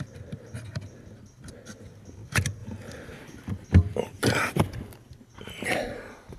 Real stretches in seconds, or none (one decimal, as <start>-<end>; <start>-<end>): 0.0-2.6; 3.5-6.4